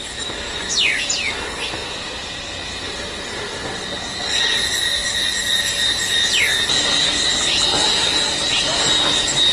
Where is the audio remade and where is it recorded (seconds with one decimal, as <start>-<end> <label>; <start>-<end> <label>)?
0.0-0.5 recorded; 0.5-1.0 remade; 1.0-9.5 recorded